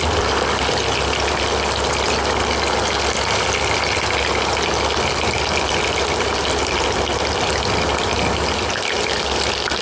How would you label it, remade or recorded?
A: recorded